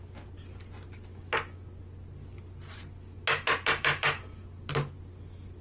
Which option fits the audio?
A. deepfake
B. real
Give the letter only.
B